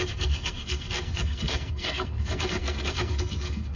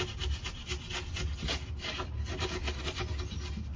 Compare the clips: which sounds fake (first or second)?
first